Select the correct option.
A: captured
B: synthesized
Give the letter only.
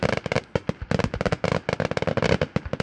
A